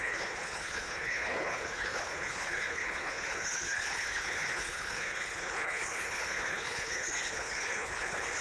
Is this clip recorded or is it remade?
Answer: remade